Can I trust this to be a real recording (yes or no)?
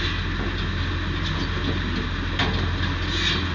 yes